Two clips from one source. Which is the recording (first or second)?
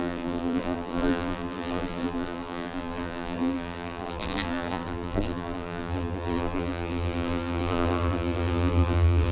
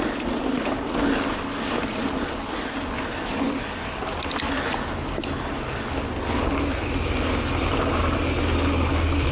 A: second